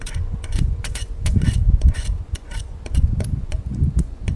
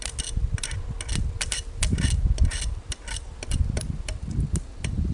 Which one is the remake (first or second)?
first